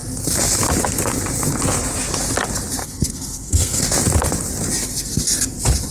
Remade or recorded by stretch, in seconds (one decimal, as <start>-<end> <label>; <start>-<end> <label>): 0.0-2.8 recorded; 2.8-3.8 remade; 3.8-5.9 recorded